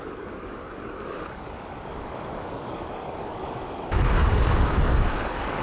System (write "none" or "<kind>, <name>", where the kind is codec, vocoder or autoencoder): codec, DAC